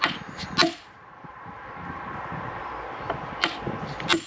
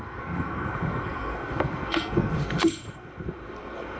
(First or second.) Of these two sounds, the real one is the first